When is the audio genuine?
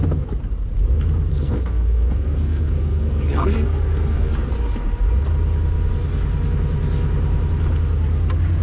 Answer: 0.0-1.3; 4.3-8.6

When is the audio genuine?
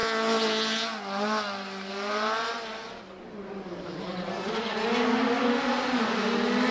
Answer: 0.0-6.7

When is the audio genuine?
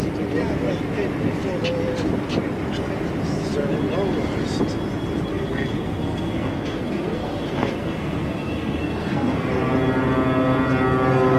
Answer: 0.0-5.3; 9.5-11.4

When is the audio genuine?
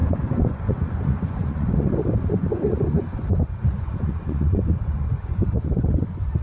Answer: none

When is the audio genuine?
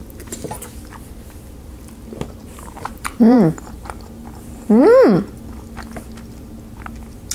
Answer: 0.0-2.4; 4.8-7.3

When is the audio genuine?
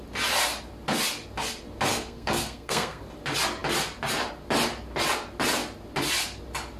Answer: 0.0-1.9; 3.0-6.8